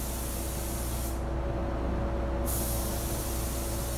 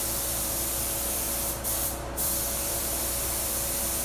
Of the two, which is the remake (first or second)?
second